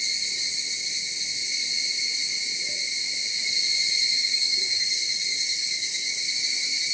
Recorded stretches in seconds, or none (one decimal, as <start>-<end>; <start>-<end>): 0.0-4.2; 6.2-6.9